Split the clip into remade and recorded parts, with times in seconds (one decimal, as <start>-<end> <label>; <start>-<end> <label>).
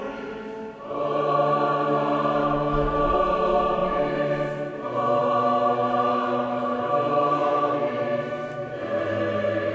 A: 0.0-2.4 recorded; 2.4-3.0 remade; 3.0-6.1 recorded; 6.1-8.8 remade; 8.8-9.7 recorded